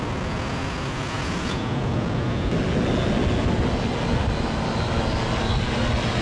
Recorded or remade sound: recorded